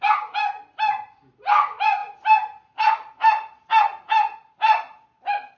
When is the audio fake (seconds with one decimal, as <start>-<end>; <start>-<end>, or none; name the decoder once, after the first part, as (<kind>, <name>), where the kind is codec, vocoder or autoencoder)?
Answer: none